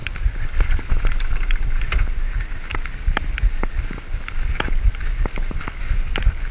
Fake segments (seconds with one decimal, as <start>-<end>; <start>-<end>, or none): none

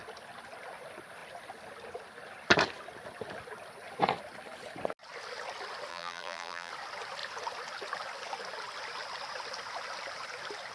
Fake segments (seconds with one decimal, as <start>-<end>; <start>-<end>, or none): 5.9-6.7

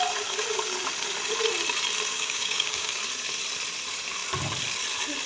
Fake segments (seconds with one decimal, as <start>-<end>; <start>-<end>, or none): 2.1-3.0

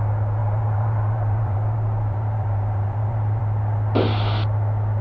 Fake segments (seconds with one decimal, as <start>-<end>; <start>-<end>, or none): 0.4-3.4

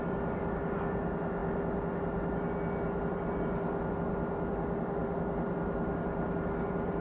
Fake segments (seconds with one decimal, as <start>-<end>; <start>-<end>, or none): none

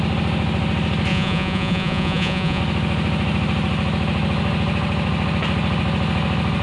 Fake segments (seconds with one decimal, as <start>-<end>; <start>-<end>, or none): 1.1-2.6

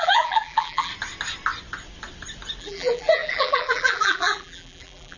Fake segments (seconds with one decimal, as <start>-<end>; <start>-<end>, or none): 0.0-0.9; 2.6-5.2

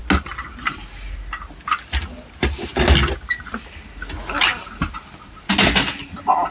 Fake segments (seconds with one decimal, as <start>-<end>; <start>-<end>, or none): none